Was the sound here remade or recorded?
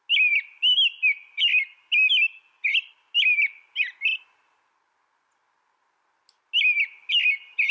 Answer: recorded